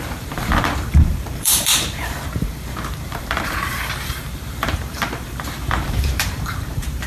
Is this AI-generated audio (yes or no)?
yes